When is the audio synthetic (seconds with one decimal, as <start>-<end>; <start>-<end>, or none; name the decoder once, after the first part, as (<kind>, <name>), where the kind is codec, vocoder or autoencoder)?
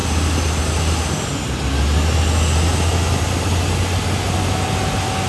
none